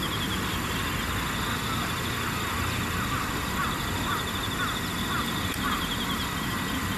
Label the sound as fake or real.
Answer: real